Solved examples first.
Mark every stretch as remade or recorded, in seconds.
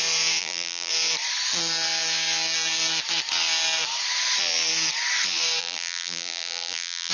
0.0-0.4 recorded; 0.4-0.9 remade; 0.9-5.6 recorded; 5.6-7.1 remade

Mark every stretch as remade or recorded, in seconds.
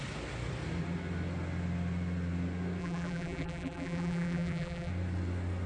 0.0-2.8 recorded; 2.8-4.9 remade; 4.9-5.7 recorded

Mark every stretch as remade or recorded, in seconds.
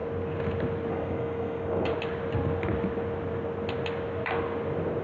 0.0-0.9 recorded; 0.9-1.9 remade; 1.9-5.0 recorded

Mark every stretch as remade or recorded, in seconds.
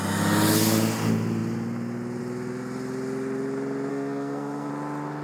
0.0-3.9 recorded; 3.9-4.7 remade; 4.7-5.2 recorded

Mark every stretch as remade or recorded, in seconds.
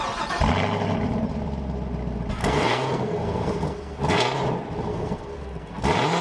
0.0-2.4 recorded; 2.4-4.0 remade; 4.0-4.9 recorded; 4.9-5.8 remade; 5.8-6.2 recorded